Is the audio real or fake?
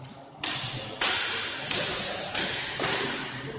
real